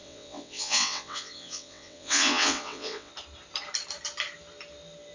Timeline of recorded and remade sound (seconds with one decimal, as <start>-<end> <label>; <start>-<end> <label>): 0.0-3.1 remade; 3.1-5.1 recorded